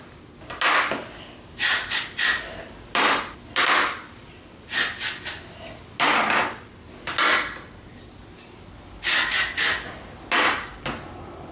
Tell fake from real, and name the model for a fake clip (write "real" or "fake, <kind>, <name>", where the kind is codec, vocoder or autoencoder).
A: real